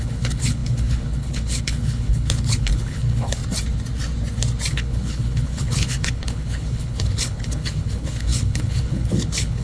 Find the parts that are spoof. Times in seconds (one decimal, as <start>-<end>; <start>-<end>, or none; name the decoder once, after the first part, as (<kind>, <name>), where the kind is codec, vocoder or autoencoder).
0.0-3.4 (codec, HILCodec); 4.7-9.6